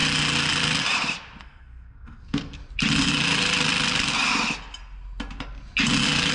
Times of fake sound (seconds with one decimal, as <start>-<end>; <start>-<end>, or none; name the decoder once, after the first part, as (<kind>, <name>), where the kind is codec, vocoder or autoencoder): 1.4-2.6 (codec, SNAC)

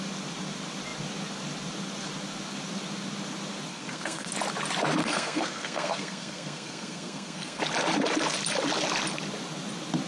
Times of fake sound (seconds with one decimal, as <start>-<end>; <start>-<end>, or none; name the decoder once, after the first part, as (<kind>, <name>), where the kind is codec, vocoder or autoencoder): 3.7-4.3 (codec, SNAC); 5.0-7.6